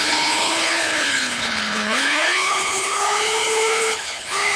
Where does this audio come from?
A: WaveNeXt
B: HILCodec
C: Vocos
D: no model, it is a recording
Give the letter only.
B